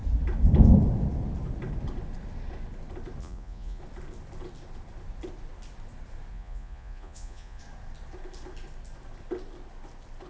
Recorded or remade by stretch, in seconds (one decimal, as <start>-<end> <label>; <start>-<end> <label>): 0.0-3.2 recorded; 3.2-3.8 remade; 3.8-6.3 recorded; 6.3-7.6 remade; 7.6-10.3 recorded